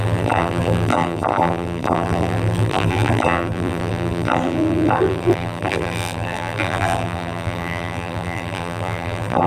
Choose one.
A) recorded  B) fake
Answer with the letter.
B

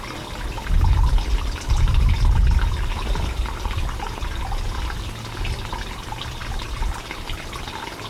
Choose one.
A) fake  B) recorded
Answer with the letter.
A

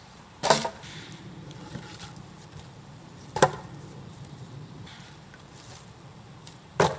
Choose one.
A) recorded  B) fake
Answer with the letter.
B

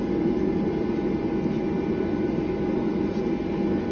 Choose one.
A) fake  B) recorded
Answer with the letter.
B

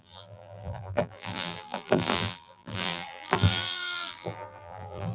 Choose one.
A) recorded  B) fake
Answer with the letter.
B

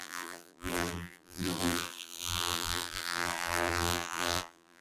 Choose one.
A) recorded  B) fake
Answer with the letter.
B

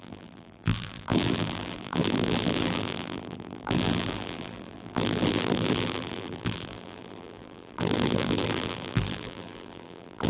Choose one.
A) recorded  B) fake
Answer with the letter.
B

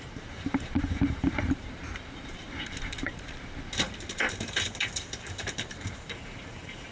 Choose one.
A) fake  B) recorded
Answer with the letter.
A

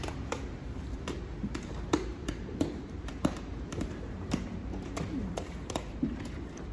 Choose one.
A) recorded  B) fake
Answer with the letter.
B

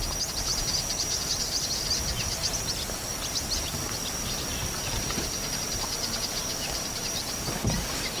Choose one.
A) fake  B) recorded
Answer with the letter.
A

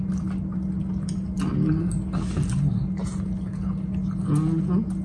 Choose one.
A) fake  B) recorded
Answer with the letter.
B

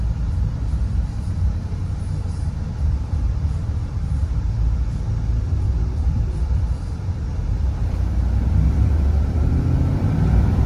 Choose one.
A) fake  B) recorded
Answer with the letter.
A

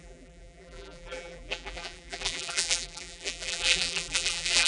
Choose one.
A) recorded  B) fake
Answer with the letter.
B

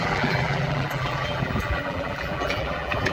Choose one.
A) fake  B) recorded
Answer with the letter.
A